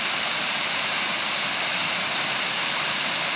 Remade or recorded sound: remade